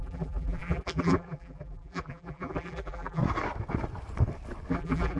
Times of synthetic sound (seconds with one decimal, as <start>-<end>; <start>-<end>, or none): 0.0-3.2; 4.7-5.2